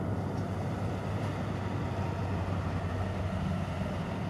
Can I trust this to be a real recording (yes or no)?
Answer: yes